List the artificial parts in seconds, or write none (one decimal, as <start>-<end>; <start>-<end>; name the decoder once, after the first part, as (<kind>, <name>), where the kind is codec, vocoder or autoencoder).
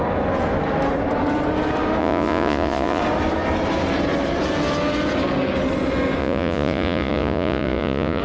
2.0-3.0 (vocoder, Vocos); 6.2-8.2